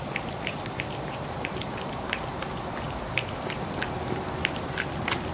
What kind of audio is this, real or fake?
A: fake